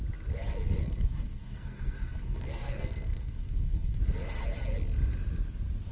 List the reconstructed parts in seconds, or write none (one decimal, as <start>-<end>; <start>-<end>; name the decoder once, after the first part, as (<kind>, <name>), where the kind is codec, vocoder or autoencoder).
0.8-4.0 (codec, SNAC)